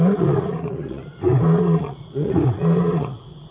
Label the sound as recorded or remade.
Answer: remade